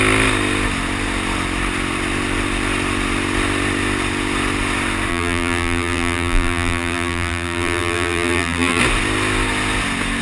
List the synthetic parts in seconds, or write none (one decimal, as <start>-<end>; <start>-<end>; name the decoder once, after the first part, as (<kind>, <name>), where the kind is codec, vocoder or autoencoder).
5.1-8.8 (vocoder, BigVGAN v2)